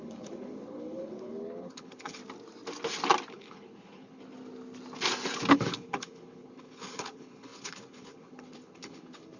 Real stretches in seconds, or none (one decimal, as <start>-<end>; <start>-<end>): 2.2-3.3; 4.2-5.5